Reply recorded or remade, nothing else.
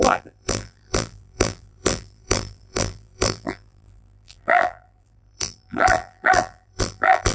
remade